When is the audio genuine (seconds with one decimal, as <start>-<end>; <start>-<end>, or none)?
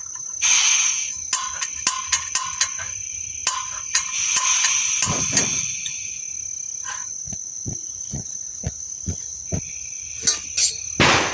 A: 0.0-7.0; 9.6-11.3